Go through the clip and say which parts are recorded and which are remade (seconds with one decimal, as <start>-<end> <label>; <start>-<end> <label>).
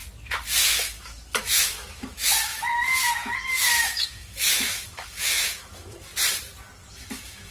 0.0-0.6 recorded; 0.6-6.1 remade; 6.1-6.9 recorded; 6.9-7.5 remade